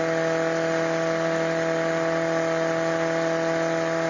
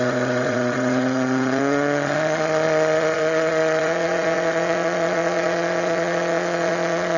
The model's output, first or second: second